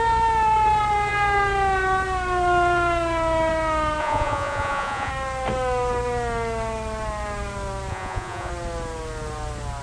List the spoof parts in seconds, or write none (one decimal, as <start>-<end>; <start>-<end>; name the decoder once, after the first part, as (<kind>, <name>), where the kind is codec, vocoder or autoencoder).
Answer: 4.0-5.1 (vocoder, Vocos); 7.9-8.5